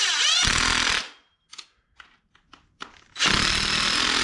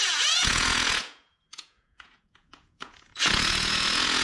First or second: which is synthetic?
second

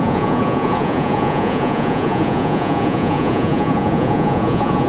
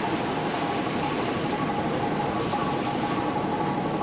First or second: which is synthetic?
first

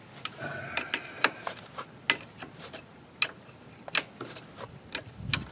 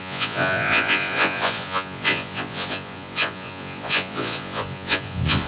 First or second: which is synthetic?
second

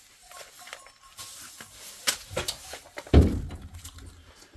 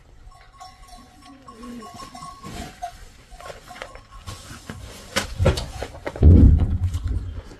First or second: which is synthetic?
second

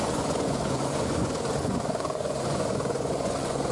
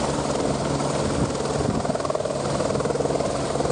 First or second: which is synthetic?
first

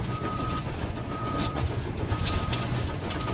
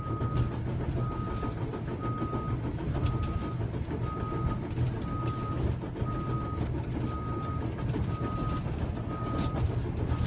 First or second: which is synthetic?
first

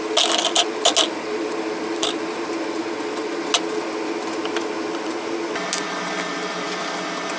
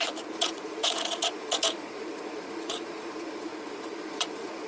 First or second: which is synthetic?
second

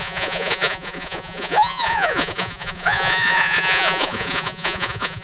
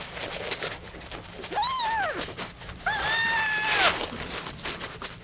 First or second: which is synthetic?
first